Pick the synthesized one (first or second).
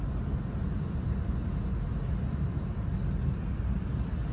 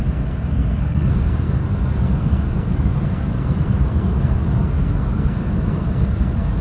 second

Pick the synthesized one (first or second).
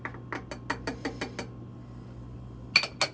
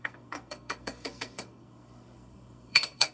second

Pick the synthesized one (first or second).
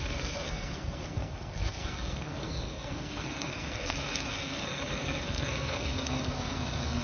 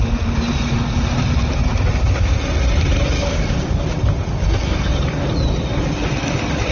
first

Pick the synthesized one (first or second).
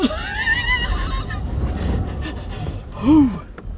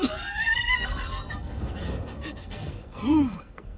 second